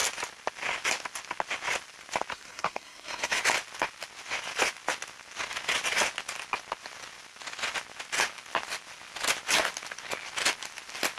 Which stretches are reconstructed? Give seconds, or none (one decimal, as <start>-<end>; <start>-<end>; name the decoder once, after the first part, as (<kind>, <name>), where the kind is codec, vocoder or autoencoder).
2.3-3.4 (codec, SNAC)